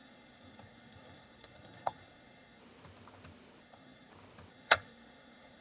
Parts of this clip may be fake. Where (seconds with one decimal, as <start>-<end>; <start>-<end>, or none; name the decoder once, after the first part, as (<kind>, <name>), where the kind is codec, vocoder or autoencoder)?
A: 0.0-2.6 (codec, SNAC); 3.6-4.1; 4.5-5.6